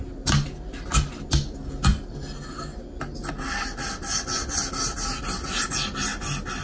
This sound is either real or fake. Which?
real